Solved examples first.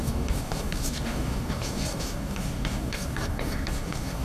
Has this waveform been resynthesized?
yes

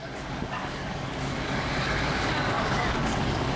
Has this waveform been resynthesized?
yes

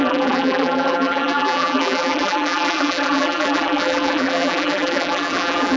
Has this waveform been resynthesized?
yes